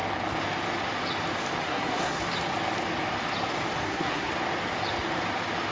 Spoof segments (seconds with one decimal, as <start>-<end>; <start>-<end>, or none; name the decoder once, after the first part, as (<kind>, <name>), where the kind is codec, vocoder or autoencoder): 1.6-2.2 (codec, SNAC); 3.8-4.3